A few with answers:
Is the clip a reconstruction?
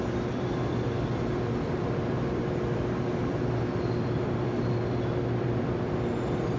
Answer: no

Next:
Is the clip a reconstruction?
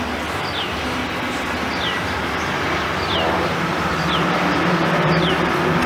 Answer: yes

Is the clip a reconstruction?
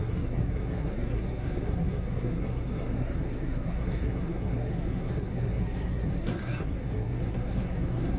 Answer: yes